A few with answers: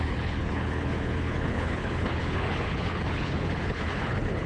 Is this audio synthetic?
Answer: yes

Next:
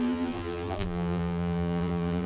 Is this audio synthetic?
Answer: yes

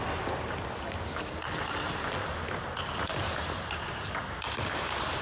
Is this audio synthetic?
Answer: no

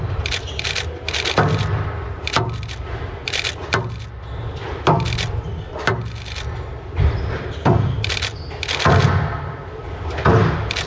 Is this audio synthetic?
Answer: no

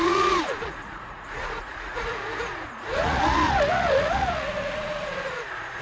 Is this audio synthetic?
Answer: yes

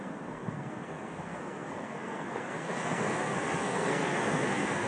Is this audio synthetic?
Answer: yes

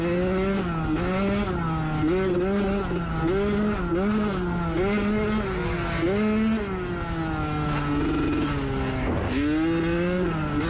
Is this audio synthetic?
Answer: no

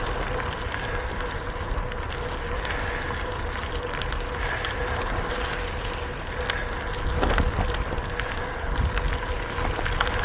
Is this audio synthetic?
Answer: no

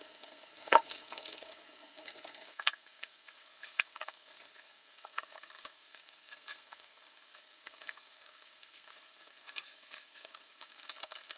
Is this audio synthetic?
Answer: yes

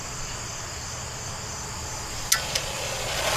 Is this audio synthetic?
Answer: no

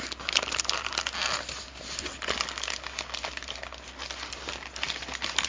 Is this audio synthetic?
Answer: no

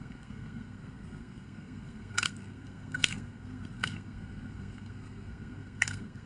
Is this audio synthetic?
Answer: yes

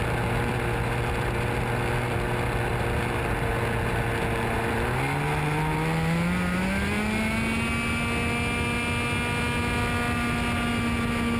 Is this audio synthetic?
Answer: no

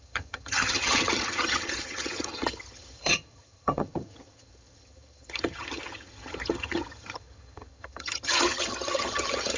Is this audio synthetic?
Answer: yes